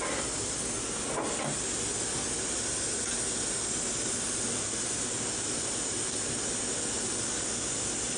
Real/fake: real